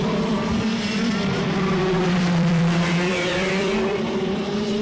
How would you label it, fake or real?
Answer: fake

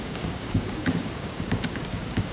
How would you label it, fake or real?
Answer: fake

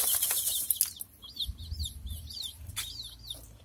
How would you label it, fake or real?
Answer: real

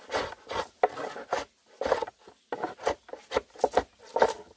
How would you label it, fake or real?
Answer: real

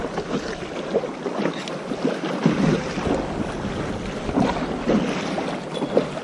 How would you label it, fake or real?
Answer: real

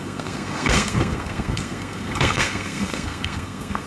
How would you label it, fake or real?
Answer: fake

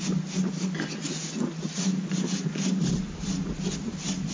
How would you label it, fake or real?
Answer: real